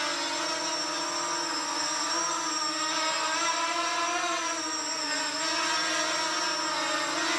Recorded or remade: recorded